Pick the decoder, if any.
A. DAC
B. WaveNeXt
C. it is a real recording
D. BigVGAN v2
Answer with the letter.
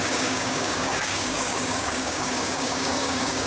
A